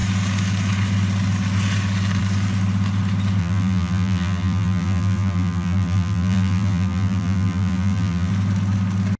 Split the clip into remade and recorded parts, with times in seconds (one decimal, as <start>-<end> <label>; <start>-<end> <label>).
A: 0.0-3.4 recorded; 3.4-8.3 remade; 8.3-9.2 recorded